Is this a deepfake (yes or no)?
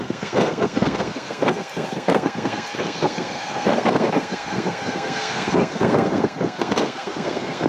yes